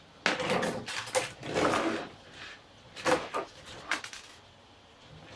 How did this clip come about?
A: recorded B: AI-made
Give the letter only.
A